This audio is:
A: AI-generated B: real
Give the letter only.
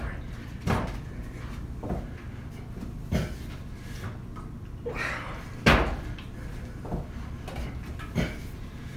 B